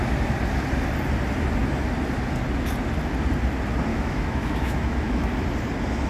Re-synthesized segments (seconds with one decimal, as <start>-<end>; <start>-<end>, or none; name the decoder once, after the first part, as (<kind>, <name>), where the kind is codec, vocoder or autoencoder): 3.9-5.3 (autoencoder, DAC-VAE)